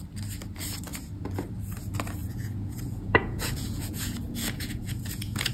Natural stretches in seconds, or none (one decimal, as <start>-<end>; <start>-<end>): 0.0-2.2

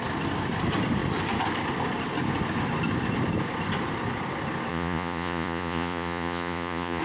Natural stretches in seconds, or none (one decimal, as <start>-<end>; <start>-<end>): 0.0-4.7

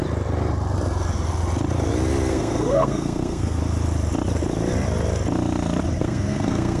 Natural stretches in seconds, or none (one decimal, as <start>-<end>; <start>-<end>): 0.0-2.3; 3.6-6.0

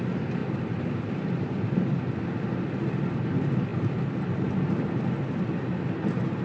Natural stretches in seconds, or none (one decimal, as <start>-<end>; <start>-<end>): 0.0-0.4; 3.3-3.7; 4.7-6.4

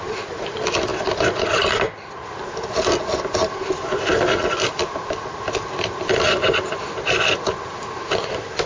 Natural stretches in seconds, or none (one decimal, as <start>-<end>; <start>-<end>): 0.0-8.7